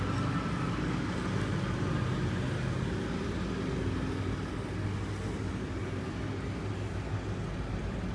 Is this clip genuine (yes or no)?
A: yes